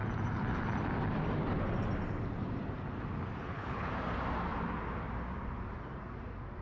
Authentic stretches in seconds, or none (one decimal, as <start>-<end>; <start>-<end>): 0.0-3.4; 3.9-6.6